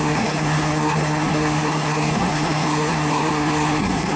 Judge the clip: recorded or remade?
remade